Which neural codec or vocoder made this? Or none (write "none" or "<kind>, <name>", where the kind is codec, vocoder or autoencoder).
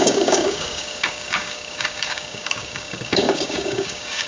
codec, DAC